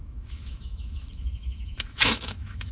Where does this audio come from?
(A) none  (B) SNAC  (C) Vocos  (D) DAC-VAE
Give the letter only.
D